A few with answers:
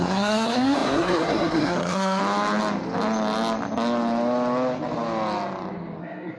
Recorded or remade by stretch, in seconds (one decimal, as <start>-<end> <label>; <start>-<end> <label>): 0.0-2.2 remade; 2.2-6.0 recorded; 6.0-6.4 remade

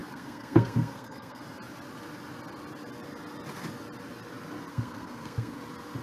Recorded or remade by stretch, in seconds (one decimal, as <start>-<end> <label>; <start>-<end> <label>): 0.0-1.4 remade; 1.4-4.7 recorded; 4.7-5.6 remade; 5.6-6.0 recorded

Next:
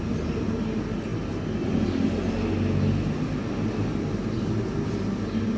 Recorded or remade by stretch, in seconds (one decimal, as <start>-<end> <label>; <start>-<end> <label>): 0.0-5.6 recorded

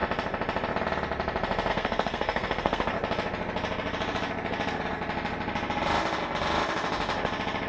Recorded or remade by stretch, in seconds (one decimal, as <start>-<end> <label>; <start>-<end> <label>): 0.0-1.7 recorded; 1.7-2.9 remade; 2.9-7.7 recorded

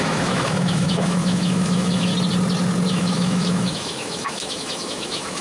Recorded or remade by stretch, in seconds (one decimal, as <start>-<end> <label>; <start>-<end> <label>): 0.0-2.1 remade; 2.1-2.9 recorded; 2.9-5.4 remade

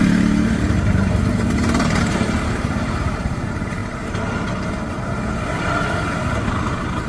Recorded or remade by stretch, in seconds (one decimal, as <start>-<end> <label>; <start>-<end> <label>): 0.0-3.8 remade; 3.8-6.3 recorded; 6.3-7.1 remade

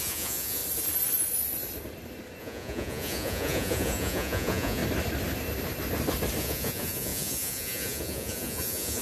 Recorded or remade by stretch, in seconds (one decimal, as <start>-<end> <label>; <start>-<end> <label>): 0.0-0.6 remade; 0.6-2.4 recorded; 2.4-4.8 remade; 4.8-6.4 recorded; 6.4-9.0 remade